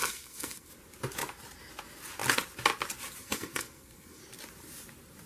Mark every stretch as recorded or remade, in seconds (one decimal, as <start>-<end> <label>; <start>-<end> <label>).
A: 0.0-0.7 remade; 0.7-3.2 recorded; 3.2-4.2 remade; 4.2-5.3 recorded